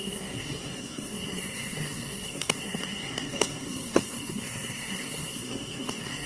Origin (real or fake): fake